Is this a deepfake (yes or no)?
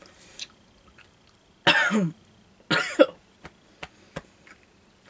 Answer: no